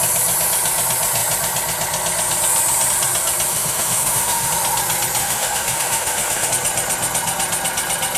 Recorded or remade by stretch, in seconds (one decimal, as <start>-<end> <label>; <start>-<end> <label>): 0.0-3.5 recorded; 3.5-4.5 remade; 4.5-5.2 recorded; 5.2-6.5 remade; 6.5-8.2 recorded